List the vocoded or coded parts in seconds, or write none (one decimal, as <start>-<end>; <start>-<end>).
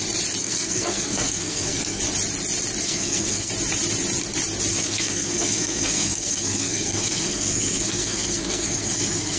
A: 0.4-2.0; 2.8-3.5; 4.7-9.4